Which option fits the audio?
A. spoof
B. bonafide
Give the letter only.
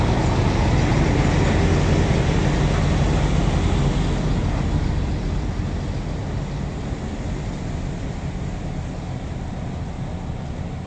B